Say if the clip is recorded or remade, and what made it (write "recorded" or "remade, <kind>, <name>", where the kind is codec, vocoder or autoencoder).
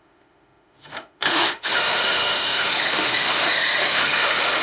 remade, autoencoder, DAC-VAE